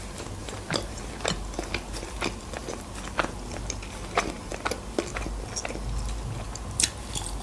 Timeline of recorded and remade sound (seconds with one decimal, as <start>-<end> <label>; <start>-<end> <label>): 0.0-0.4 recorded; 0.4-1.1 remade; 1.1-7.4 recorded